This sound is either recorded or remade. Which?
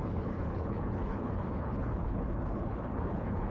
remade